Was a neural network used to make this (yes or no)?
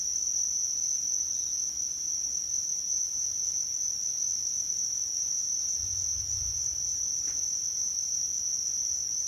no